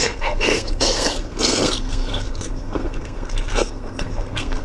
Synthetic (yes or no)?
yes